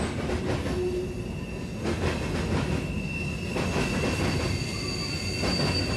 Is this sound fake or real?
real